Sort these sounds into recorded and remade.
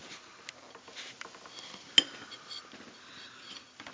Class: recorded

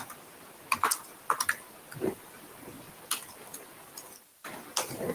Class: recorded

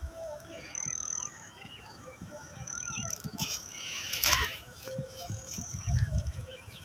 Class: remade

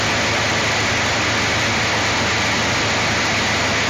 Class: recorded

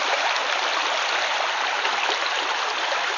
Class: recorded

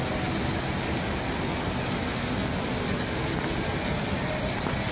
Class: recorded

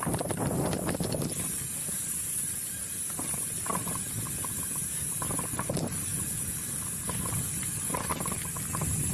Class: recorded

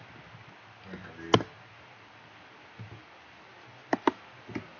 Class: recorded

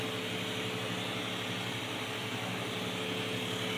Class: recorded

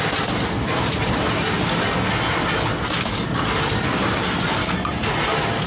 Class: recorded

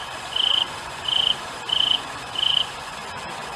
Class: remade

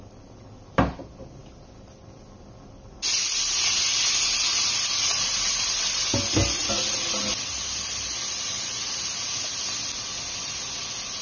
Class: recorded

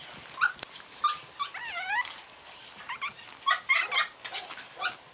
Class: recorded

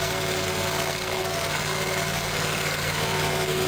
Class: remade